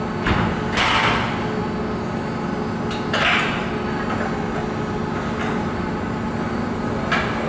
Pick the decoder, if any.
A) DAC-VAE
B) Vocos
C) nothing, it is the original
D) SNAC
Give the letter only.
C